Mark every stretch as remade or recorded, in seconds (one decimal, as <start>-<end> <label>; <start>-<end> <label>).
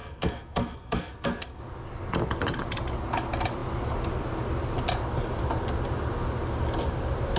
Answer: 0.0-1.6 remade; 1.6-7.4 recorded